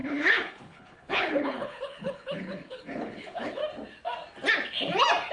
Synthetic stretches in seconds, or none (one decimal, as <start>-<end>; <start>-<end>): 0.0-3.6

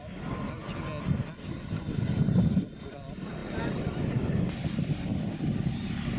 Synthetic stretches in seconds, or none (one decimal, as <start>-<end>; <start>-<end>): none

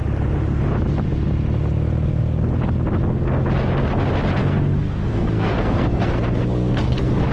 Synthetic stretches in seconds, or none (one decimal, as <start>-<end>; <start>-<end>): 4.4-7.3

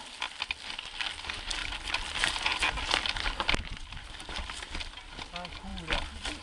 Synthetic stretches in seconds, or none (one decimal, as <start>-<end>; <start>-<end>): none

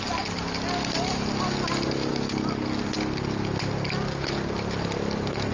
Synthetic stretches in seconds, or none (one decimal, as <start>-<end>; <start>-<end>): none